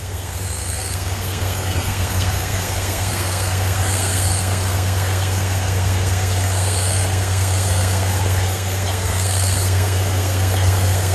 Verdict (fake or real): fake